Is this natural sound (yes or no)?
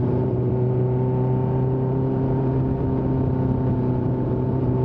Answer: yes